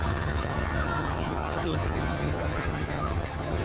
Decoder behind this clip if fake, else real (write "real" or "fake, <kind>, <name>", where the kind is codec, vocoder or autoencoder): fake, vocoder, HiFi-GAN